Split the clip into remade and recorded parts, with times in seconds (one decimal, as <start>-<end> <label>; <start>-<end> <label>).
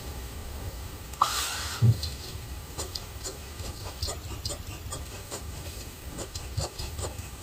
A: 0.0-4.0 remade; 4.0-5.0 recorded; 5.0-7.4 remade